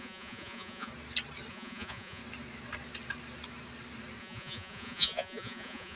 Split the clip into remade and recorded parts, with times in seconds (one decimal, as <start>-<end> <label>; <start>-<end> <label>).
0.0-0.9 remade; 0.9-1.5 recorded; 1.5-2.2 remade; 2.2-4.2 recorded; 4.2-6.0 remade